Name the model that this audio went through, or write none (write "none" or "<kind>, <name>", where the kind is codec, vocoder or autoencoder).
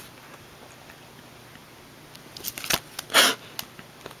none